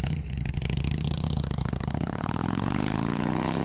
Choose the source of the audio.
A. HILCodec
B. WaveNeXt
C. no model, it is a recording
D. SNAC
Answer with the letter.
A